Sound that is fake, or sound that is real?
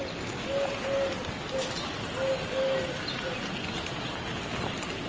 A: real